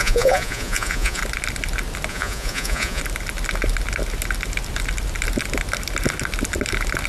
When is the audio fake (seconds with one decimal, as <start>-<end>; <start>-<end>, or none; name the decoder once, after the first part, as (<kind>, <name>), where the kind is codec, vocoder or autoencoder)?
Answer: 0.0-1.2 (vocoder, Vocos); 2.1-3.0